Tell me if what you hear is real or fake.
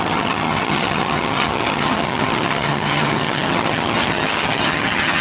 fake